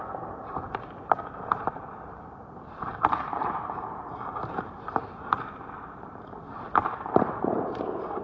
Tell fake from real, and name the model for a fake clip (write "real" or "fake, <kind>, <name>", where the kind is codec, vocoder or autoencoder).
fake, vocoder, BigVGAN v2